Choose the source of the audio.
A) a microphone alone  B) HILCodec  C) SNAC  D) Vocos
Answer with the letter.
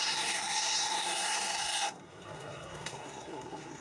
C